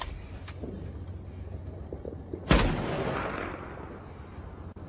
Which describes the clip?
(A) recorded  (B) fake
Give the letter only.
A